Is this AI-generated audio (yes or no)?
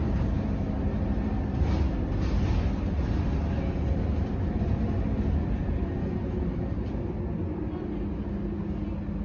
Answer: no